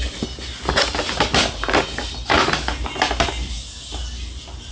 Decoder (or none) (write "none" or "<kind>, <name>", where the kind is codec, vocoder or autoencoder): none